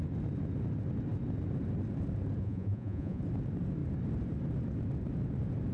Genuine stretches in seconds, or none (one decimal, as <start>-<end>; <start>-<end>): 0.0-2.4; 3.2-5.7